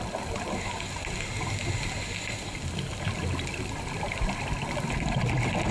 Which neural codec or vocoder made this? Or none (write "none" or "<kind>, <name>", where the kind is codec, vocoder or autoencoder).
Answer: none